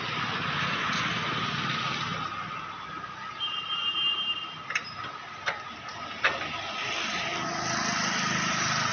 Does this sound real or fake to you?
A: real